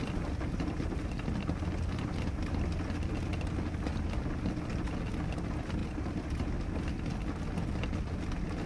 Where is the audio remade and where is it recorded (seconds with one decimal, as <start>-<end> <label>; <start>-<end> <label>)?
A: 0.0-5.8 recorded; 5.8-6.3 remade; 6.3-8.7 recorded

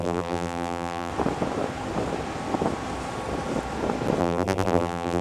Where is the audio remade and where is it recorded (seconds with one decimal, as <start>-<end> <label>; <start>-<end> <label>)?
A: 0.0-1.1 remade; 1.1-4.2 recorded; 4.2-5.2 remade

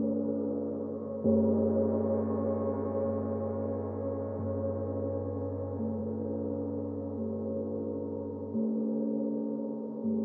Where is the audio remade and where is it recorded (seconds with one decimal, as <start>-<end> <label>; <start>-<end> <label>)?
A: 0.0-10.2 recorded

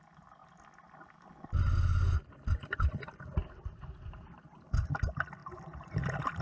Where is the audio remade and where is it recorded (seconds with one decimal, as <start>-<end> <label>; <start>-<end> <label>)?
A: 0.0-5.4 recorded; 5.4-6.4 remade

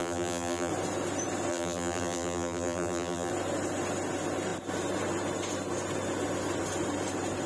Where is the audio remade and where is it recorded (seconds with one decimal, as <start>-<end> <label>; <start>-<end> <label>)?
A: 0.0-0.7 remade; 0.7-1.5 recorded; 1.5-3.3 remade; 3.3-7.5 recorded

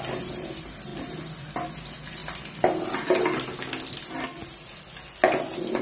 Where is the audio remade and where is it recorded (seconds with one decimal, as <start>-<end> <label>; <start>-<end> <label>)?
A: 0.0-0.9 remade; 0.9-1.7 recorded; 1.7-2.2 remade; 2.2-5.8 recorded